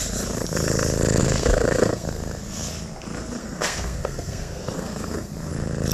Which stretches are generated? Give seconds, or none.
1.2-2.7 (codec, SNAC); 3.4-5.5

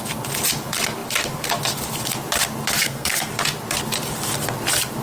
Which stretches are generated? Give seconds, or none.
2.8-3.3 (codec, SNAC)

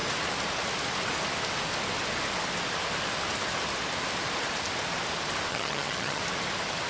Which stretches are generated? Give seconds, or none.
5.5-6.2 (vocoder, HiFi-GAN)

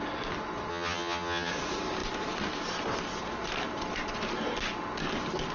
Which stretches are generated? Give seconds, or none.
0.7-1.5 (vocoder, HiFi-GAN)